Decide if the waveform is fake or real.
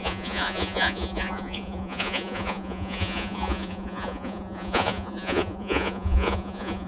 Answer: fake